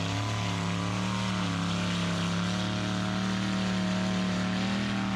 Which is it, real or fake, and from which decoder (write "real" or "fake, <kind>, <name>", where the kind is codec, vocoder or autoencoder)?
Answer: real